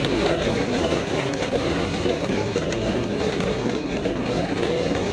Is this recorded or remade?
remade